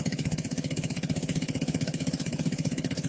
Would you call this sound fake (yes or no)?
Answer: yes